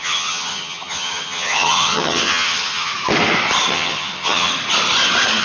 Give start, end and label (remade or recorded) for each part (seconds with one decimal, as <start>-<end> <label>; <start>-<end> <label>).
0.0-2.9 remade; 2.9-3.7 recorded; 3.7-4.5 remade; 4.5-5.4 recorded